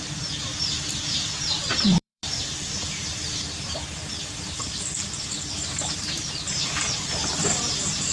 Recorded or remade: remade